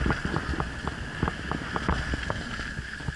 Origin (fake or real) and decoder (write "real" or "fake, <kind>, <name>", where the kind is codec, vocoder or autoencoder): real